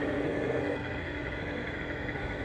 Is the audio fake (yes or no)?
yes